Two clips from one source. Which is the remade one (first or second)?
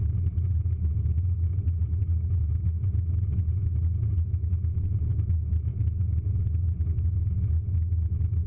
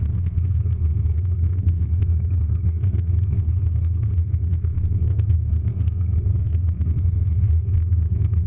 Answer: second